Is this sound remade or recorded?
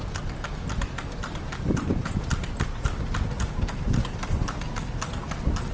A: recorded